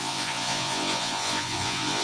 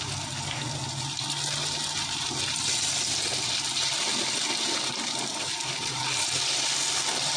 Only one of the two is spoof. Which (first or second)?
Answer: first